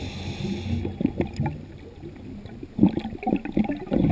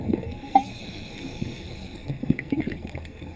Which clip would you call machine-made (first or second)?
second